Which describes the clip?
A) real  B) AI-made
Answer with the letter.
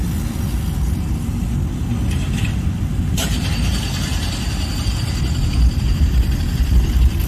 A